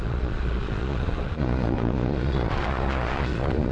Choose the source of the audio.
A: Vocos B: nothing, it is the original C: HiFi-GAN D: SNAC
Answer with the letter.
A